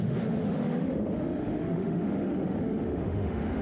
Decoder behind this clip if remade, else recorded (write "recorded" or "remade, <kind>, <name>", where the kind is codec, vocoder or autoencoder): remade, autoencoder, DAC-VAE